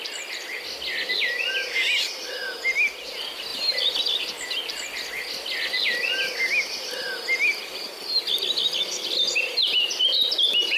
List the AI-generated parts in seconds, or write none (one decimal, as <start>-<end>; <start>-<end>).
none